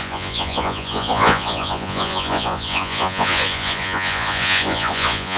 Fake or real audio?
fake